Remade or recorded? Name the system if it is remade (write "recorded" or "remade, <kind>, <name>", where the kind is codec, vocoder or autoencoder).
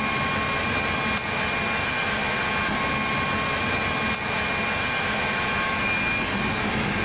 recorded